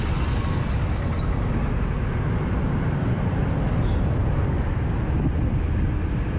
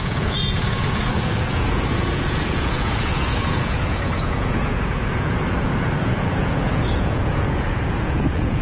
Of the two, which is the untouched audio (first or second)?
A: first